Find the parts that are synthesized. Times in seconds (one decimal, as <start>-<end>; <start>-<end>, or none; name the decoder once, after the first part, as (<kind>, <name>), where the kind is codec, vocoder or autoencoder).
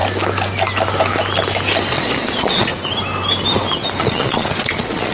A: 1.9-2.7 (vocoder, Vocos); 4.0-5.1